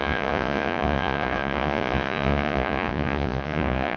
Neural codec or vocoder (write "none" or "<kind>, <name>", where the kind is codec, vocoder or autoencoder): vocoder, Vocos